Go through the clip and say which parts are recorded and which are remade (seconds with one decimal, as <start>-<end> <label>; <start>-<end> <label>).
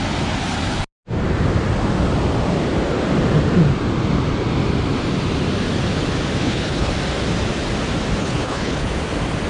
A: 0.0-6.4 recorded; 6.4-6.9 remade; 6.9-8.2 recorded; 8.2-8.9 remade; 8.9-9.5 recorded